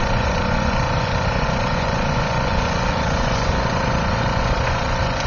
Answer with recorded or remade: remade